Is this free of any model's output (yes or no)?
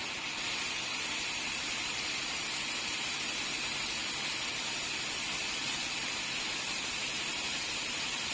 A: yes